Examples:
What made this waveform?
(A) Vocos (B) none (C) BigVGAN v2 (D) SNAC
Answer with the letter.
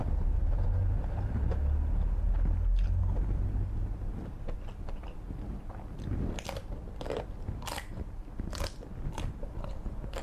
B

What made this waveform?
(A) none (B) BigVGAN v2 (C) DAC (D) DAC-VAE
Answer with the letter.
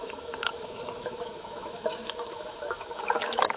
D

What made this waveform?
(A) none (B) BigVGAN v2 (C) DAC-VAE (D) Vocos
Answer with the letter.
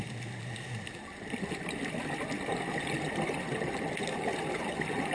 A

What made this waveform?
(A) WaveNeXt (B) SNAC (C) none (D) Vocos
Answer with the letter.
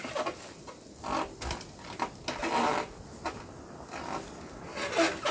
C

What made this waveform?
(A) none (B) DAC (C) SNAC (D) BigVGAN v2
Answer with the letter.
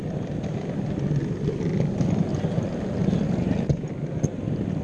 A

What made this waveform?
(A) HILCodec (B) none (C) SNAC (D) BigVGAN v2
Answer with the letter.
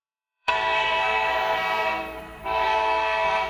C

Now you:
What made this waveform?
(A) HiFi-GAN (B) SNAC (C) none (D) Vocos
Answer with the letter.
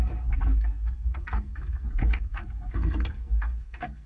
B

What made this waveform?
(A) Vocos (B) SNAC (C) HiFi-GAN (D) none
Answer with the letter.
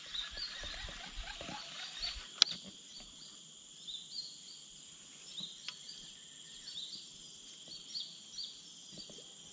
D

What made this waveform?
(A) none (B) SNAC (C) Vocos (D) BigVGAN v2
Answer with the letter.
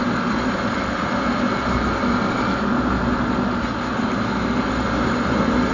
A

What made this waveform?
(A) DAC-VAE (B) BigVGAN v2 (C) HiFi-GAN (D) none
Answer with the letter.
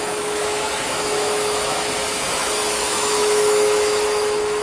A